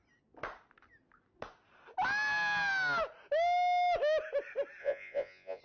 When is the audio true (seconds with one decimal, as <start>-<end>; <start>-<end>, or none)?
0.0-4.8